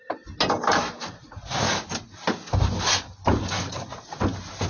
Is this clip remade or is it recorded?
recorded